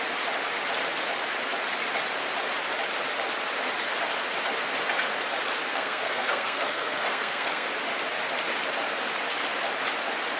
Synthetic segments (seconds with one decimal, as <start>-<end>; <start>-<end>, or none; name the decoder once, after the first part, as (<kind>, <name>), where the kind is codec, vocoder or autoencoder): 5.7-7.7 (codec, SNAC)